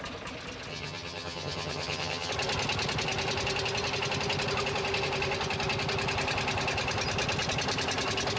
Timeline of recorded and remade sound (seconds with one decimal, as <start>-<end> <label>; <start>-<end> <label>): 0.0-0.7 recorded; 0.7-2.3 remade; 2.3-8.4 recorded